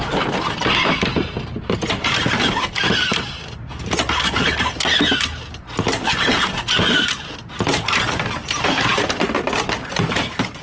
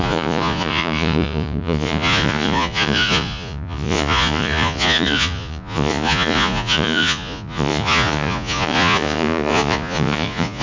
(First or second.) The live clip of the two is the first